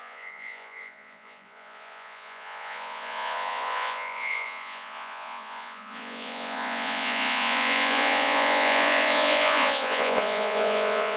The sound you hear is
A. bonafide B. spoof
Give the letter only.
B